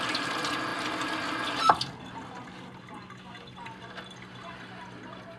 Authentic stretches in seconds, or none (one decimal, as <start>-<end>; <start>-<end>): 0.0-5.4